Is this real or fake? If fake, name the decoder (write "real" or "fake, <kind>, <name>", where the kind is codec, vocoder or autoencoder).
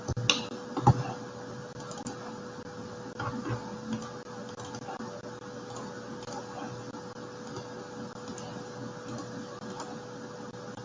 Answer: real